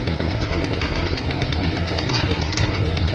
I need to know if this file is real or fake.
fake